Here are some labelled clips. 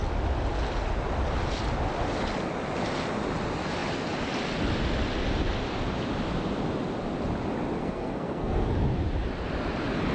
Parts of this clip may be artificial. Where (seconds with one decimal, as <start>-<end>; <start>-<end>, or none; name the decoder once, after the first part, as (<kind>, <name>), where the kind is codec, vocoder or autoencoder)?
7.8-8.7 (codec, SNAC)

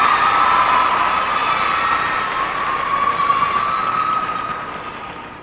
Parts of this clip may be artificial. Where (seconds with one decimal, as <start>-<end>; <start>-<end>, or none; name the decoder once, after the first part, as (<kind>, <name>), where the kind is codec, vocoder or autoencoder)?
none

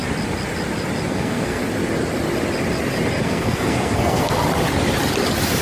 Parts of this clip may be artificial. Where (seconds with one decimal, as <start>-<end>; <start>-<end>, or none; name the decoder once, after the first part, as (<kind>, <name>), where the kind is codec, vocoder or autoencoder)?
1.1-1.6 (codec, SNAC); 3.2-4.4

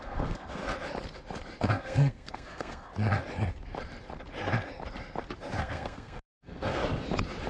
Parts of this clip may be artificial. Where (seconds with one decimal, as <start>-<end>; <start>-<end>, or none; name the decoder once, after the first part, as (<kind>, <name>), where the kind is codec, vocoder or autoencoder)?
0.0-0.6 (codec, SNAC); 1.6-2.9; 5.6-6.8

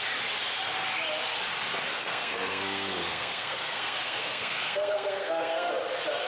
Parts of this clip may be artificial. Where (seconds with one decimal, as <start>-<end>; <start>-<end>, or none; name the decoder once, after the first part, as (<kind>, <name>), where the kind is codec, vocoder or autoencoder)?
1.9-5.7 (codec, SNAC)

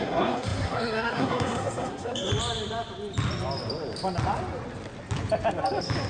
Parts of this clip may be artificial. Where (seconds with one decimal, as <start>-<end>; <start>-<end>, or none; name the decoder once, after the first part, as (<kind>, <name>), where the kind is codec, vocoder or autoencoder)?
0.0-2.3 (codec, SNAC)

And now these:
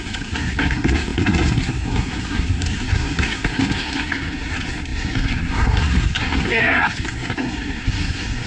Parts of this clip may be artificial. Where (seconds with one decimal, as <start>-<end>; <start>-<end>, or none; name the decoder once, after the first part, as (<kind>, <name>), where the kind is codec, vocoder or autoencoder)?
0.0-8.5 (codec, SNAC)

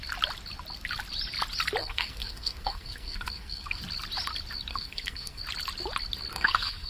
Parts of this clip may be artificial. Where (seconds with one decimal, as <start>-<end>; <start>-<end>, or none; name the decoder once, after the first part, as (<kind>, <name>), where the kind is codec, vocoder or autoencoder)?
1.8-3.8 (codec, SNAC); 4.7-5.4; 6.3-6.9